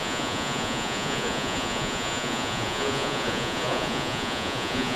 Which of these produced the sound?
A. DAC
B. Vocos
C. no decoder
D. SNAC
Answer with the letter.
B